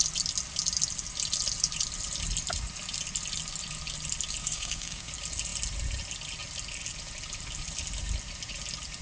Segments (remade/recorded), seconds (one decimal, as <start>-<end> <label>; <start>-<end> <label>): 0.0-4.4 recorded; 4.4-5.1 remade; 5.1-9.0 recorded